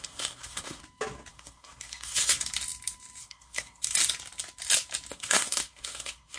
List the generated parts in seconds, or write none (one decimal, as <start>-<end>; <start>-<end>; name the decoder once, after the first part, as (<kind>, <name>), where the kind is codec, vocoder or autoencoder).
0.0-0.8 (codec, SNAC); 1.3-2.4; 3.2-3.9; 5.1-6.4